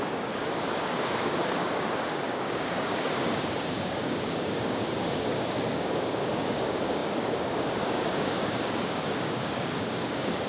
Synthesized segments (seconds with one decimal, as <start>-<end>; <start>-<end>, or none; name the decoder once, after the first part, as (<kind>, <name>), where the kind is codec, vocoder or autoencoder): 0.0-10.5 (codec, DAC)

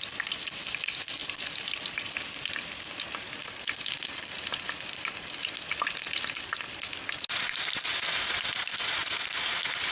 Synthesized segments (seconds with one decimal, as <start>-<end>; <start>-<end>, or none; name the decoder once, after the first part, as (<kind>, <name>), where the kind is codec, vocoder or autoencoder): 1.2-2.5 (vocoder, BigVGAN v2)

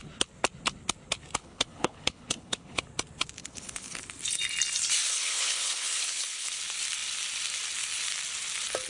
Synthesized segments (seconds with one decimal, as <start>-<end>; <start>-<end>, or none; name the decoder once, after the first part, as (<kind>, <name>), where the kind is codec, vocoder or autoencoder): 1.4-2.8 (codec, HILCodec); 3.4-4.0; 5.1-6.6